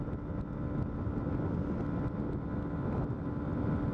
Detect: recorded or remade recorded